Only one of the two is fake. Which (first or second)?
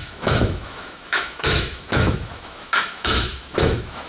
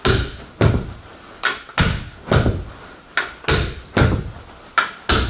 first